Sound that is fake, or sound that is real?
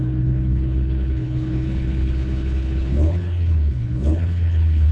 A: fake